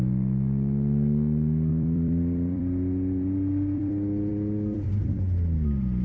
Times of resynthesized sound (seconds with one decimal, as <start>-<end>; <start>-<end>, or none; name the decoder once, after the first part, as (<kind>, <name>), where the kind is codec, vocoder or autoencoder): 1.7-3.9 (vocoder, BigVGAN v2); 4.3-4.9